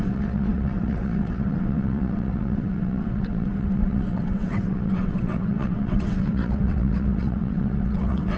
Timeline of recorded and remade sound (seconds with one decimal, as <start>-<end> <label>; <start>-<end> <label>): 0.0-8.4 remade